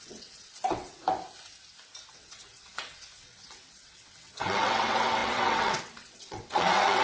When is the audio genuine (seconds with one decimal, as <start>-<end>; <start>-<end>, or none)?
1.0-2.1